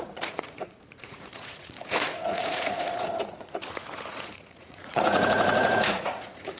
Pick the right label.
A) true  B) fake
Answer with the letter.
B